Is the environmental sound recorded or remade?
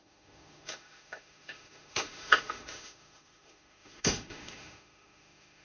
remade